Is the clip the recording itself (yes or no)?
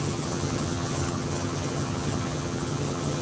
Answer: no